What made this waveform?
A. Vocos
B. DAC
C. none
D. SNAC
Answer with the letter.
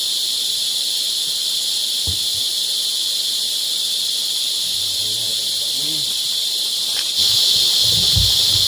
C